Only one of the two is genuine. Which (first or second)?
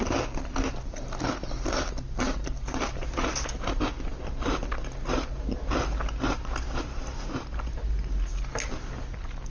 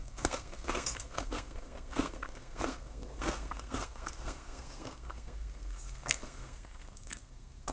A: first